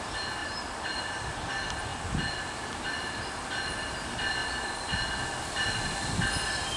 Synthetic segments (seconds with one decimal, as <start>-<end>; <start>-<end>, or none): none